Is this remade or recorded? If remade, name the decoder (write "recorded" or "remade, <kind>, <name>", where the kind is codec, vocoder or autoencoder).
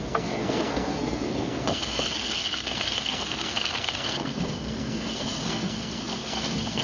remade, codec, SNAC